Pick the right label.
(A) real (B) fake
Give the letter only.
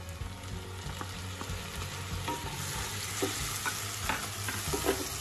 A